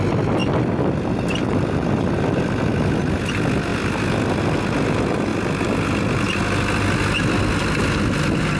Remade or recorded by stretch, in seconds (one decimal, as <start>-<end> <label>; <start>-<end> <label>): 0.0-0.4 recorded; 0.4-2.4 remade; 2.4-3.7 recorded; 3.7-4.6 remade; 4.6-8.6 recorded